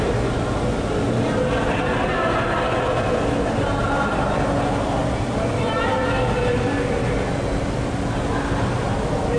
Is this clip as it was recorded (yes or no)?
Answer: yes